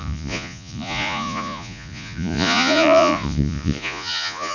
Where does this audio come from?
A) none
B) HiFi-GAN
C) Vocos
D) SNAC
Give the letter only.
C